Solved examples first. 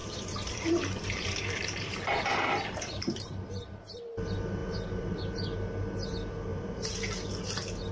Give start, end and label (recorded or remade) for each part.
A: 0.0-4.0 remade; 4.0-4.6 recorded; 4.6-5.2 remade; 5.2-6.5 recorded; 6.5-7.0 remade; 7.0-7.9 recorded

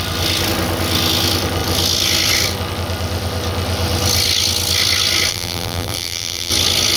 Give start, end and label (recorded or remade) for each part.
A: 0.0-5.3 recorded; 5.3-6.5 remade; 6.5-7.0 recorded

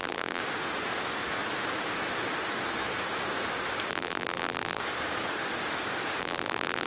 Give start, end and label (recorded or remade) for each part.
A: 0.0-0.4 remade; 0.4-3.9 recorded; 3.9-4.8 remade; 4.8-6.2 recorded; 6.2-6.9 remade

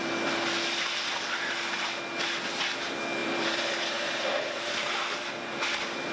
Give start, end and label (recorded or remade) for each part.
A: 0.0-3.2 recorded; 3.2-4.8 remade; 4.8-6.1 recorded

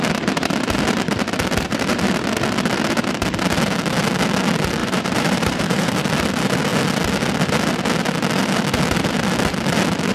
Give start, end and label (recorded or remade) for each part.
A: 0.0-4.8 recorded; 4.8-6.1 remade; 6.1-10.1 recorded

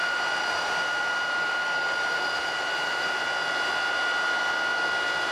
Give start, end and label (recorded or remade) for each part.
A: 0.0-3.2 remade; 3.2-5.3 recorded